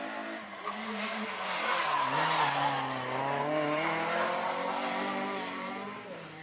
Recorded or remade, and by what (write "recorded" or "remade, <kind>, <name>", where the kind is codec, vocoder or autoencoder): recorded